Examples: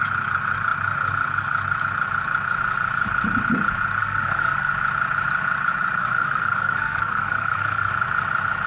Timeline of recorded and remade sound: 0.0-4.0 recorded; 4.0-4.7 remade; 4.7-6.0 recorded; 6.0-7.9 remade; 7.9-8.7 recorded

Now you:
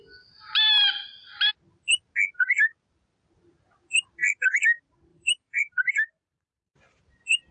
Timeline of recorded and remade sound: 0.0-5.1 recorded; 5.1-7.0 remade; 7.0-7.5 recorded

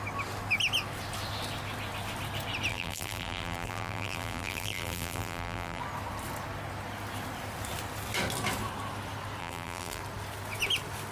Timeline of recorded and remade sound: 0.0-2.7 recorded; 2.7-5.8 remade; 5.8-9.4 recorded; 9.4-10.0 remade; 10.0-11.1 recorded

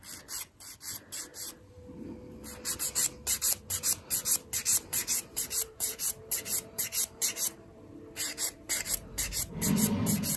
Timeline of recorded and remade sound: 0.0-4.7 recorded; 4.7-9.7 remade; 9.7-10.4 recorded

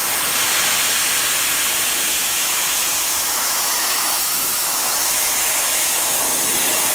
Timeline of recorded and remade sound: 0.0-2.1 recorded; 2.1-6.2 remade; 6.2-6.9 recorded

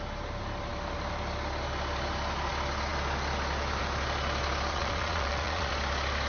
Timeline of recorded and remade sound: 0.0-4.7 recorded; 4.7-5.7 remade; 5.7-6.3 recorded

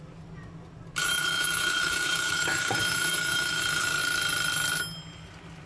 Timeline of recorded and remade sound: 0.0-1.0 recorded; 1.0-3.6 remade; 3.6-5.7 recorded